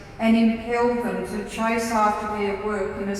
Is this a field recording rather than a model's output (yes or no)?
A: no